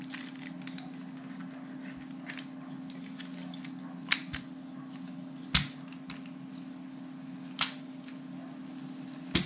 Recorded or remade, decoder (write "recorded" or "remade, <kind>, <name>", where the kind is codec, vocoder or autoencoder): recorded